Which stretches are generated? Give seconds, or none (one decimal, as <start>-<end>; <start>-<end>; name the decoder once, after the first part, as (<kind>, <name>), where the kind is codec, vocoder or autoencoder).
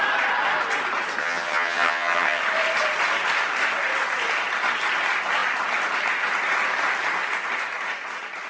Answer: 1.2-2.4 (vocoder, HiFi-GAN)